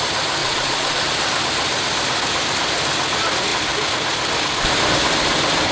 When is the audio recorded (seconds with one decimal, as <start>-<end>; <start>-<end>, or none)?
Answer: 0.0-0.4; 1.0-5.7